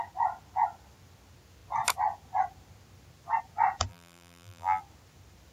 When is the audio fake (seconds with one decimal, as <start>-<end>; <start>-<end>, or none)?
3.9-4.8